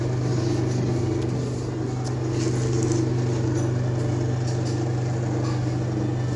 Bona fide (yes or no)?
yes